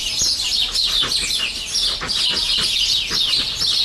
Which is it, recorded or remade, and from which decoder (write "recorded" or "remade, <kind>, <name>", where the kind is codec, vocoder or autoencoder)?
recorded